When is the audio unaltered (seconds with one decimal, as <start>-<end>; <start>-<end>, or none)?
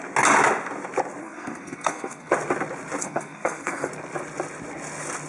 0.0-1.2; 2.3-3.0; 3.9-5.3